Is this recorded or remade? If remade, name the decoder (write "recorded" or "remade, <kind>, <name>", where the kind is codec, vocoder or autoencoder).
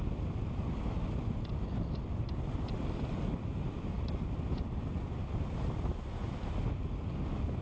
recorded